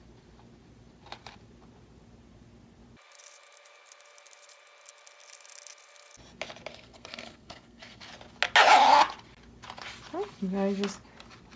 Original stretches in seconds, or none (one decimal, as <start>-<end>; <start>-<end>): 0.0-6.7; 8.1-11.6